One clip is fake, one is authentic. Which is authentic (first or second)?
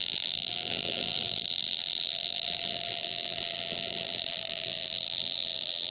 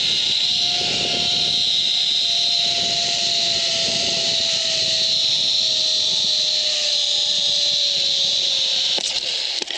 second